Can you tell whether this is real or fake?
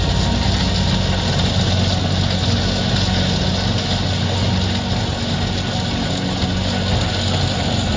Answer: real